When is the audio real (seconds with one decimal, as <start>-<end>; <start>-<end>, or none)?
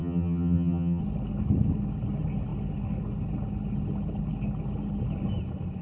1.0-5.8